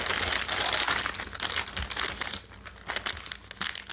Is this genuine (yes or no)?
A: yes